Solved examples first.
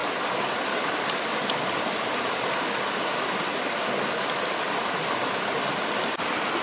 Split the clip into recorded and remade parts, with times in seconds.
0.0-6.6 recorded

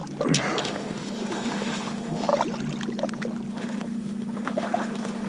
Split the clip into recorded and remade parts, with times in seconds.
0.0-0.6 recorded; 0.6-2.3 remade; 2.3-3.5 recorded; 3.5-5.3 remade

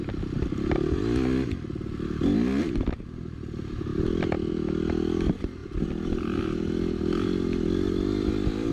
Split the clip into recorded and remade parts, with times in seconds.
0.0-2.6 recorded; 2.6-5.6 remade; 5.6-6.2 recorded; 6.2-8.7 remade

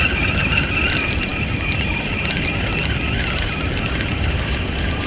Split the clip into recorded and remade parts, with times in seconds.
0.0-5.1 recorded